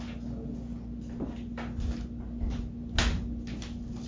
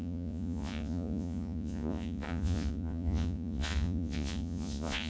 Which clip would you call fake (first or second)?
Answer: second